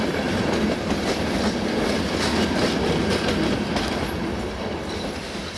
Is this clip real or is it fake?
fake